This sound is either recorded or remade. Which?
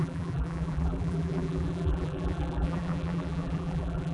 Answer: remade